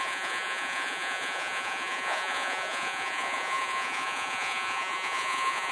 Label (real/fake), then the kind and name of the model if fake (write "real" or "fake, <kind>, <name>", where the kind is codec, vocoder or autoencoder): fake, vocoder, Vocos